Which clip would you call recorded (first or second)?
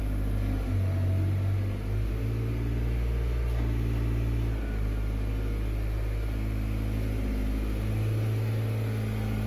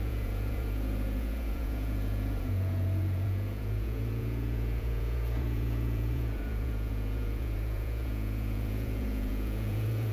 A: first